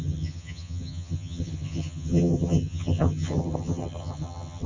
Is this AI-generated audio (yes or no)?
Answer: yes